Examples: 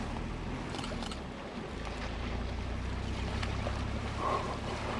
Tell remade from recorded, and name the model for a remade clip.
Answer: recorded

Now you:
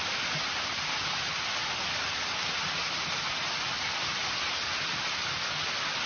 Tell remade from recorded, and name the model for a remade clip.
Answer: recorded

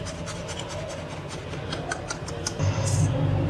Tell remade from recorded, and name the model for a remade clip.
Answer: recorded